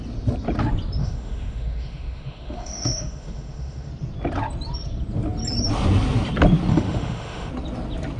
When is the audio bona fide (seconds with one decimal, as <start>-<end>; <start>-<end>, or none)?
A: 0.0-1.0; 3.9-6.7; 7.5-8.2

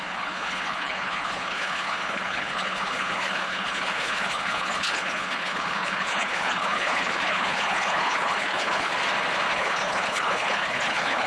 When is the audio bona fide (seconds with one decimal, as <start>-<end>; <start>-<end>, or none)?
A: 8.9-9.5

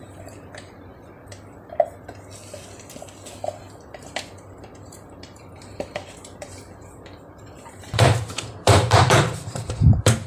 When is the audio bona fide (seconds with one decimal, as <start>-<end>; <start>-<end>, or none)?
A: 0.9-4.6

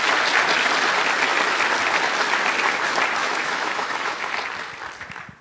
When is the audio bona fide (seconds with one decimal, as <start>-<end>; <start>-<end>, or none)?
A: 0.0-3.2; 4.3-5.4

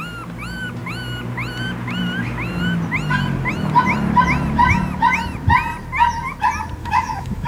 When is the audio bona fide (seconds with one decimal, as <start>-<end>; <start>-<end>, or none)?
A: 0.0-6.8

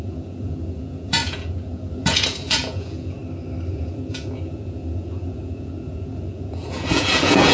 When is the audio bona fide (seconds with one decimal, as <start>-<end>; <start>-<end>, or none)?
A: 3.2-3.7

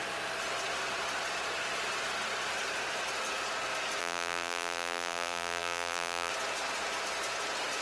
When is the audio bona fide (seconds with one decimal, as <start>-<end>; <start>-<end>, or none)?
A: 0.0-4.0; 6.3-7.8

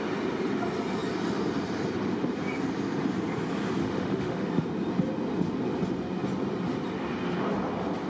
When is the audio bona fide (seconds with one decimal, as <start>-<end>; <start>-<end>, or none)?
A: 0.0-3.8; 4.5-8.1